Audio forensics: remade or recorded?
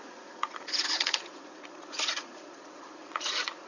remade